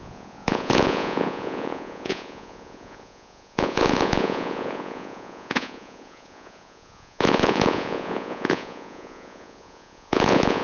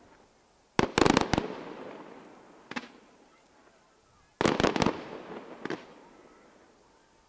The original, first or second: second